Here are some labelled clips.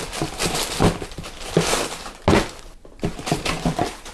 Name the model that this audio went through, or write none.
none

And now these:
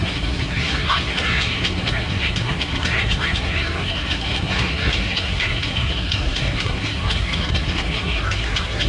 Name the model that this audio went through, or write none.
codec, SNAC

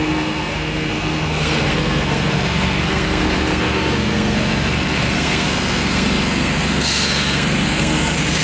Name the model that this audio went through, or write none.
codec, SNAC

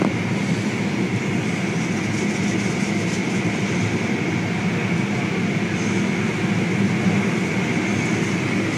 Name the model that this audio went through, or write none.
none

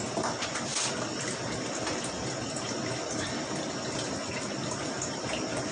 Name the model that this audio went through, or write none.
none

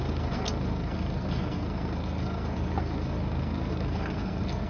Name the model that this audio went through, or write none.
codec, SNAC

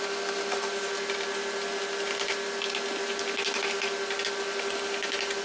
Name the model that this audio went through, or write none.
none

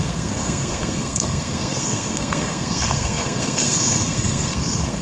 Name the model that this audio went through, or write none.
codec, SNAC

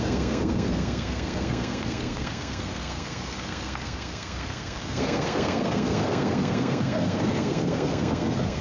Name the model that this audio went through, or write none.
codec, SNAC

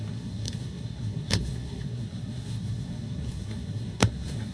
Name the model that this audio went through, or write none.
codec, SNAC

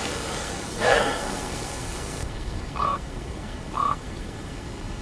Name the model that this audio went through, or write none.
codec, SNAC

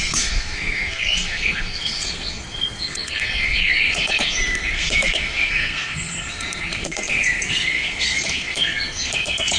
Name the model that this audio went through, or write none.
codec, SNAC